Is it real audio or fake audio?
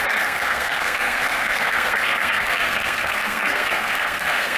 fake